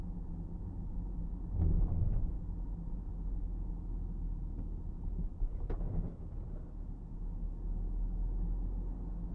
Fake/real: real